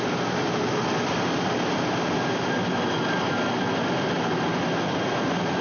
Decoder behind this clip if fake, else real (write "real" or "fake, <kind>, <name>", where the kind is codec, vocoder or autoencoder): real